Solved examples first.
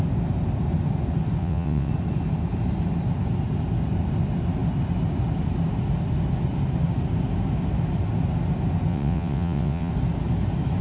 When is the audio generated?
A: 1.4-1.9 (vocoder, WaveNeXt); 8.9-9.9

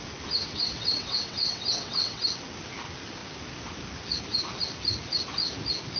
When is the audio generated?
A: 0.4-2.2 (vocoder, WaveNeXt)